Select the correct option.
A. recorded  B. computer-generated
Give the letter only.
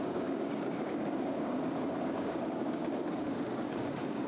B